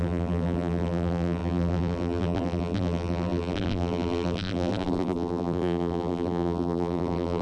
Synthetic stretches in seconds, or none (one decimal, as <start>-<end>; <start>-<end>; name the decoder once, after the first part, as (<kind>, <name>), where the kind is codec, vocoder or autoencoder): 0.0-7.4 (vocoder, BigVGAN v2)